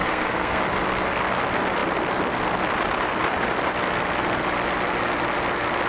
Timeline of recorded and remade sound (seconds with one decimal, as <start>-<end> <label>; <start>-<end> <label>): 0.0-0.6 remade; 0.6-5.9 recorded